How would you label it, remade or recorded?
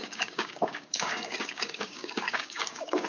remade